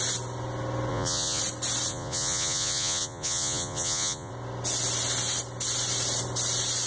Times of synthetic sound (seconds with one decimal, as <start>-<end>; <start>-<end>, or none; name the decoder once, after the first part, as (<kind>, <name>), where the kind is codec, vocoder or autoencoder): 0.9-1.4 (vocoder, Vocos); 1.9-4.3